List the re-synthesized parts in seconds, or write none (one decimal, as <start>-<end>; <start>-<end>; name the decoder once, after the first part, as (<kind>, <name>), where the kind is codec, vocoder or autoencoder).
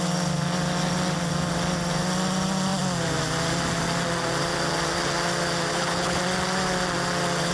5.7-6.2 (codec, HILCodec)